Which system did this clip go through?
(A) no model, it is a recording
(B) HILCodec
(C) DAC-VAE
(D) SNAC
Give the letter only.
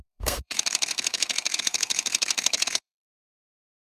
D